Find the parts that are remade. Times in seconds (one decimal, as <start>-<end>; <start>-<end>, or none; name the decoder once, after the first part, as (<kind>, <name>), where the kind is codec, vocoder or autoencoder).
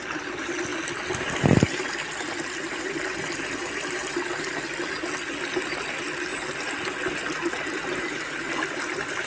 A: none